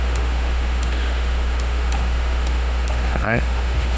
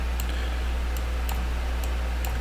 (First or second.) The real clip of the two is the second